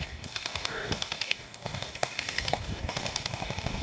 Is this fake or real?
fake